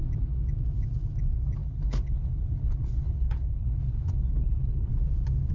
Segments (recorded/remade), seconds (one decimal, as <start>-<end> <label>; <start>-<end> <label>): 0.0-1.6 recorded; 1.6-4.9 remade; 4.9-5.5 recorded